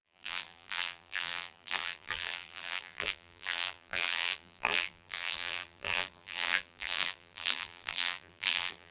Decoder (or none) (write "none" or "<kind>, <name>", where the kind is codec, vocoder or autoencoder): vocoder, BigVGAN v2